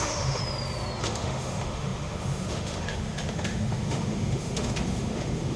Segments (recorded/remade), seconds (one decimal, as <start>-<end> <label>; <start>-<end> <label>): 0.0-0.4 remade; 0.4-1.0 recorded; 1.0-5.6 remade